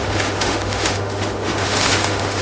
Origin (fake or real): fake